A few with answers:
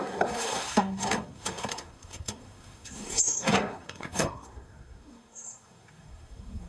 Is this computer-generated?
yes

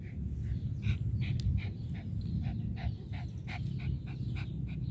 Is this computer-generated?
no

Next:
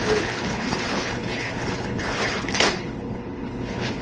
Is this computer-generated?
yes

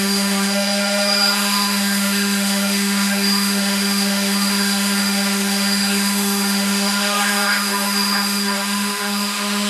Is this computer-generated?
yes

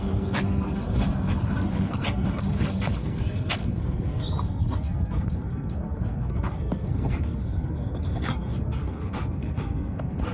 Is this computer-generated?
yes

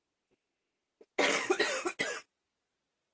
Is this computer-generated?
no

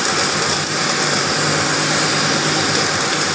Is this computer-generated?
no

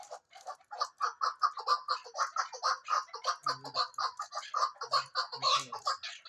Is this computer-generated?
no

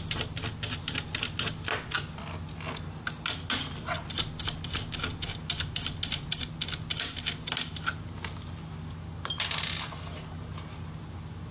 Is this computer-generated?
no